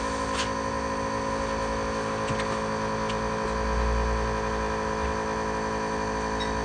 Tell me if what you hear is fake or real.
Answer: real